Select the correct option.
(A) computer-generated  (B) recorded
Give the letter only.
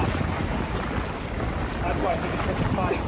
B